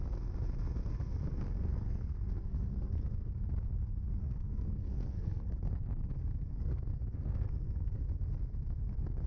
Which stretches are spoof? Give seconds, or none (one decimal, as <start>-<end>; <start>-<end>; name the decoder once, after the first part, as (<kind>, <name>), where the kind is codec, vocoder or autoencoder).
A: 1.7-3.3 (codec, SNAC); 4.2-6.1; 6.5-8.0